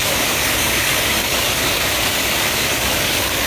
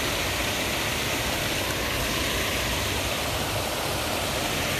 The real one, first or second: second